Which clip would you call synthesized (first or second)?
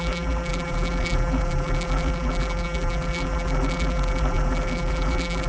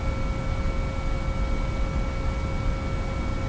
first